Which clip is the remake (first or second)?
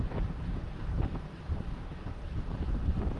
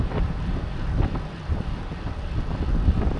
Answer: first